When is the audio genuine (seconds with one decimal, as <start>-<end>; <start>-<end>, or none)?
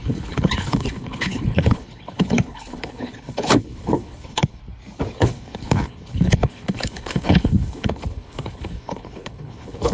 4.6-5.2